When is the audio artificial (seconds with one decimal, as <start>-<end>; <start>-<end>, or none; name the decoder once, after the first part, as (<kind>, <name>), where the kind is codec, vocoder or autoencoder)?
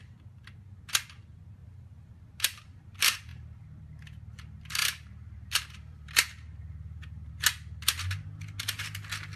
1.6-2.1 (vocoder, BigVGAN v2); 4.8-7.3